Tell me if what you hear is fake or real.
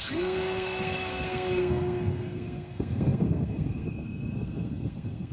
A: fake